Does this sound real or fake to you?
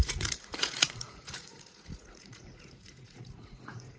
fake